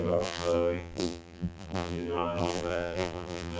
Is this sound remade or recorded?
remade